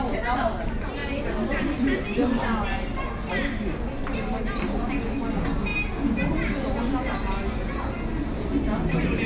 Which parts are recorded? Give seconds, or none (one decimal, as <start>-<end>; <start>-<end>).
0.0-9.3